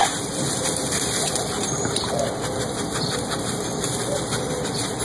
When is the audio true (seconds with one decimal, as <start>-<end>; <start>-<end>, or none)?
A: 0.0-5.0